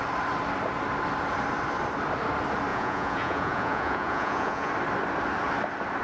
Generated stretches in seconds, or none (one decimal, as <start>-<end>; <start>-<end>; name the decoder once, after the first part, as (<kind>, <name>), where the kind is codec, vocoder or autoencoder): 2.7-4.7 (vocoder, Vocos)